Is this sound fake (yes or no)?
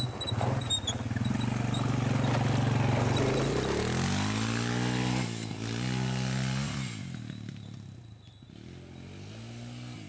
no